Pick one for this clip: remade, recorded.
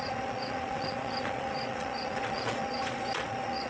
remade